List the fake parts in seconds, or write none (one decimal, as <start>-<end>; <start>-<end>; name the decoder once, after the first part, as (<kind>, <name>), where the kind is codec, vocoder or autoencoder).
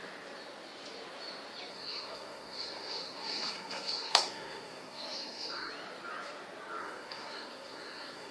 1.7-5.7 (codec, SNAC); 6.8-8.3